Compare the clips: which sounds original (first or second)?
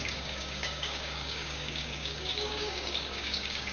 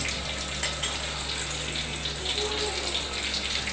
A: second